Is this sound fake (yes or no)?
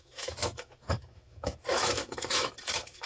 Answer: yes